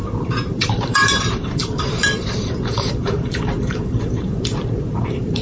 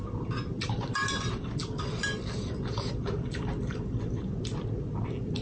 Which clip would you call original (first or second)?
second